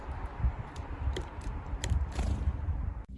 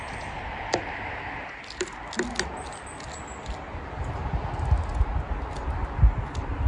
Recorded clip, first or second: second